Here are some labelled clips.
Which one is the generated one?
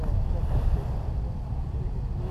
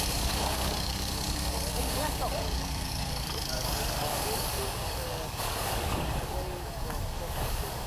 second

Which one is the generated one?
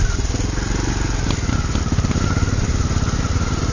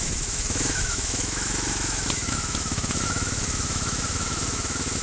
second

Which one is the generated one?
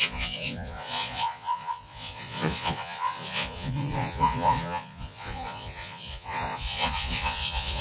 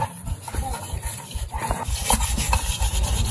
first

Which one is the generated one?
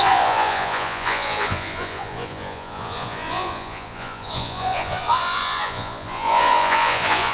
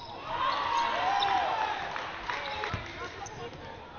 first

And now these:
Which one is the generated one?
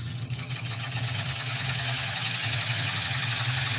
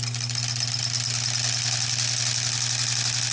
first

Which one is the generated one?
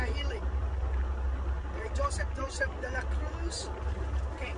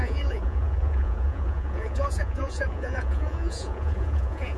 second